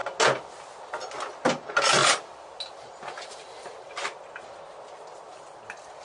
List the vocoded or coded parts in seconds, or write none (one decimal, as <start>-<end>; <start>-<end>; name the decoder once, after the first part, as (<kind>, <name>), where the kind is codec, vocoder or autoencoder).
none